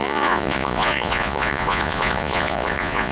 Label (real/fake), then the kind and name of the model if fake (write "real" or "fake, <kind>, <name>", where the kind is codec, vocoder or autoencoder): fake, vocoder, Vocos